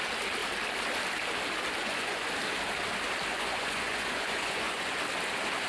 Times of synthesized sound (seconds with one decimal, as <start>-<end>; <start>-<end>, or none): 1.8-2.3; 3.3-5.0